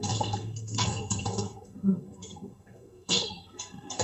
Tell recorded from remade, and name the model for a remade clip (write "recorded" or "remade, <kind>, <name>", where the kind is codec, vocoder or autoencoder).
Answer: remade, codec, SNAC